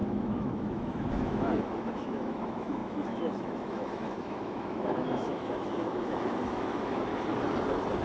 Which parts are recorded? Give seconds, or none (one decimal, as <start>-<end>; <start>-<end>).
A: 7.1-8.0